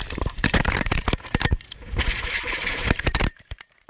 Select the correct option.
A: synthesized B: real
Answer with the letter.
A